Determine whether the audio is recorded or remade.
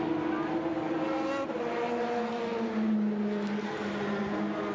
recorded